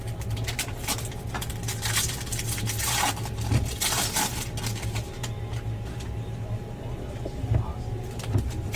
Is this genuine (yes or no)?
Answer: yes